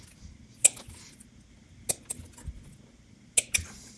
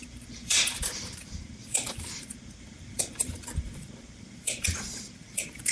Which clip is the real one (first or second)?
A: first